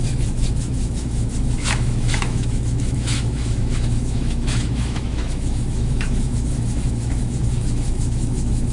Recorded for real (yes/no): no